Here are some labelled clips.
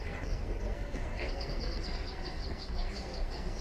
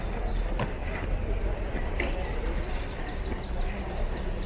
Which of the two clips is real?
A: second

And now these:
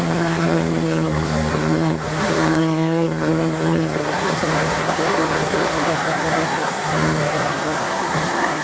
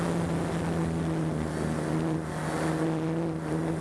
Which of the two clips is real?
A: second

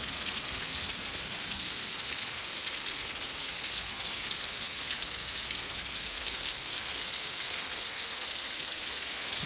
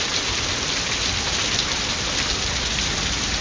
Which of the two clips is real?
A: second